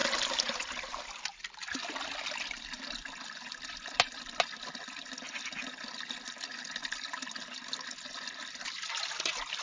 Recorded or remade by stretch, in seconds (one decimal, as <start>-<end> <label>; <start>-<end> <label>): 0.0-9.6 recorded